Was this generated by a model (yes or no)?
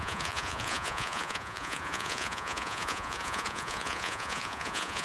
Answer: yes